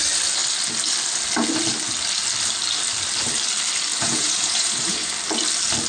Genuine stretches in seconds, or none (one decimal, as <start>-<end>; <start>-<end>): 0.0-3.9; 5.1-5.9

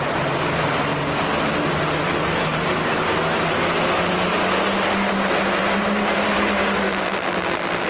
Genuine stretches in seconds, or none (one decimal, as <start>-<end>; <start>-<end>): 0.0-6.9